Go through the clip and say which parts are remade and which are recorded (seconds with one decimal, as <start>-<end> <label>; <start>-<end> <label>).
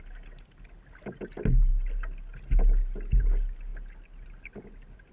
0.0-5.1 recorded